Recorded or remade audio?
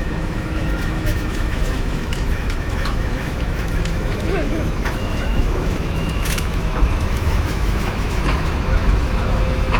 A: remade